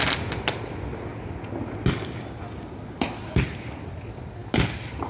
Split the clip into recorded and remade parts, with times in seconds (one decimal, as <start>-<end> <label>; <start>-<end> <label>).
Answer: 0.0-5.1 recorded